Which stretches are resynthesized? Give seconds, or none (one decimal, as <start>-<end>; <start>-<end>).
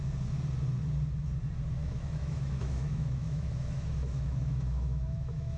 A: 1.8-5.6